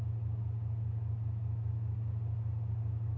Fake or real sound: real